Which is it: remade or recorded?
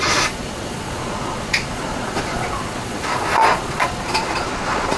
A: remade